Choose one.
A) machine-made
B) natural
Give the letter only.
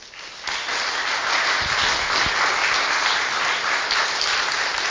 B